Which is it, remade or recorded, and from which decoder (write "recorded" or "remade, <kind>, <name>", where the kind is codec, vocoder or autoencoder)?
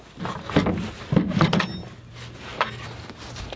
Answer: recorded